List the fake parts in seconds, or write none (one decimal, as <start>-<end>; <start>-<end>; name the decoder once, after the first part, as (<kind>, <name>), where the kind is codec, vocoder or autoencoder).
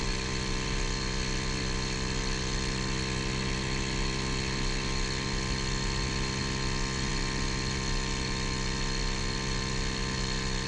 none